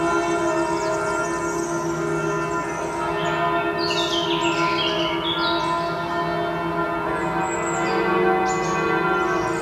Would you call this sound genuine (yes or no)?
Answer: yes